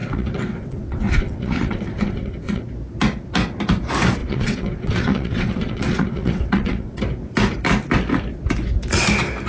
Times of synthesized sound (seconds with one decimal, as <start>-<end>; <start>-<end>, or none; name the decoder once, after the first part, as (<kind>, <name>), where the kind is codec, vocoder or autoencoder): 0.0-2.6 (vocoder, WaveNeXt); 4.2-7.0